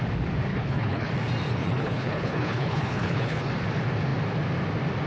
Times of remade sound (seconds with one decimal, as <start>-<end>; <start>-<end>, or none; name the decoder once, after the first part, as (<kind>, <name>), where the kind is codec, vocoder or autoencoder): 0.5-1.1 (codec, HILCodec); 1.6-3.5